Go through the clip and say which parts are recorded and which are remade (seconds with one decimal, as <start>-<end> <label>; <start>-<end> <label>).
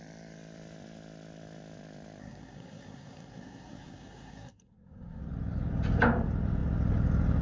0.0-2.2 recorded; 2.2-5.2 remade; 5.2-7.4 recorded